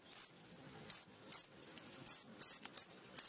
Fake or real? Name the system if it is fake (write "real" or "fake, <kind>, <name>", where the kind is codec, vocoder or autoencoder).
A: real